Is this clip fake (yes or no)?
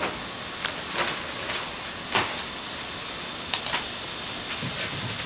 no